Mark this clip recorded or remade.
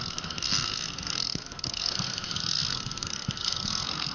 remade